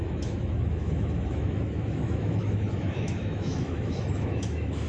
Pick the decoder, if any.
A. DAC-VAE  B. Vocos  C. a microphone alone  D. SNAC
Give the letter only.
A